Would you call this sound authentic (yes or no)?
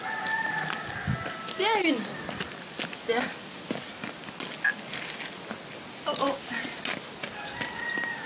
yes